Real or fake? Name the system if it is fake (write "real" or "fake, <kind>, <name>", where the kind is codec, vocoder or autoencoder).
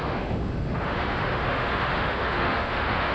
fake, autoencoder, DAC-VAE